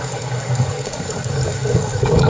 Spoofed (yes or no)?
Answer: yes